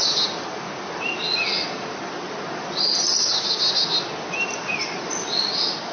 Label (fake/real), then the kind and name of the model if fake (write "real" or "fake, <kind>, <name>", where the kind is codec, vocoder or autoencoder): real